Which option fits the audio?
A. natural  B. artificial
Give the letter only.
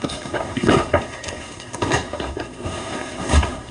B